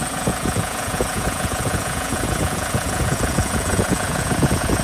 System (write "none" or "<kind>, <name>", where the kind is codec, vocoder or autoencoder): vocoder, Vocos